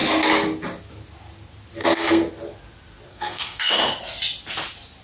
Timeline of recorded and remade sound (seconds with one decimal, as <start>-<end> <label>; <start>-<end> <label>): 0.0-1.8 recorded; 1.8-2.3 remade; 2.3-3.1 recorded; 3.1-3.7 remade; 3.7-5.0 recorded